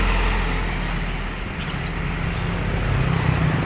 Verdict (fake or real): real